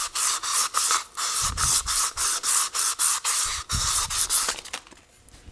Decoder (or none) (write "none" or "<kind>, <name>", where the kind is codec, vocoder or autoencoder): none